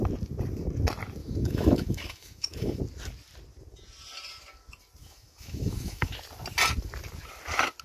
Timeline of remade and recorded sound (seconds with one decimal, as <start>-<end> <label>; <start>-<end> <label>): 0.0-1.2 recorded; 1.2-2.8 remade; 2.8-5.0 recorded; 5.0-6.1 remade; 6.1-7.8 recorded